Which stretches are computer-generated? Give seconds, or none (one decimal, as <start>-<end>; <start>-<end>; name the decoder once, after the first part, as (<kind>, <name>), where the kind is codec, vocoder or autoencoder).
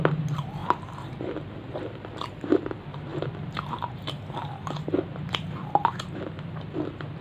0.0-0.6 (vocoder, BigVGAN v2); 1.8-7.2